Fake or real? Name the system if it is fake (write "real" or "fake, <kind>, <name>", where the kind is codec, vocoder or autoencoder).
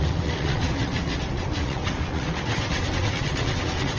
fake, vocoder, WaveNeXt